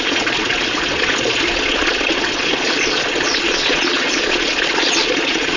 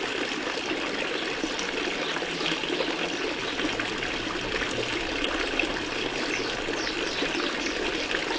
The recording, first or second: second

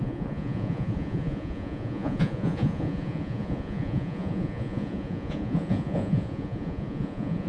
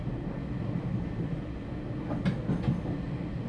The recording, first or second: second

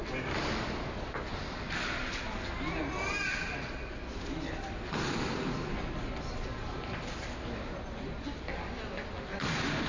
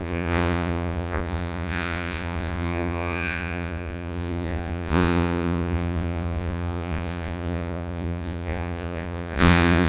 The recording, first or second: first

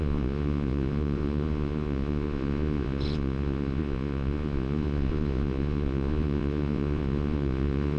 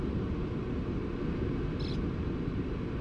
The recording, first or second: second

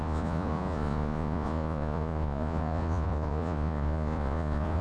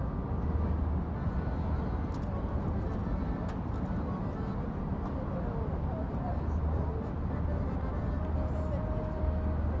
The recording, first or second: second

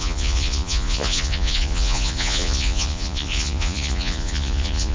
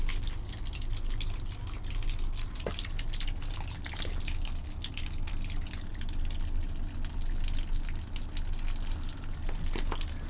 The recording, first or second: second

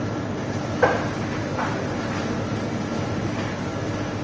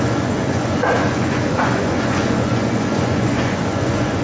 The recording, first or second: first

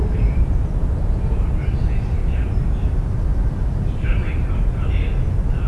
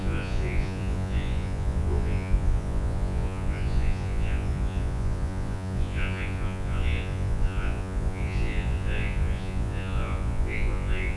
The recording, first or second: first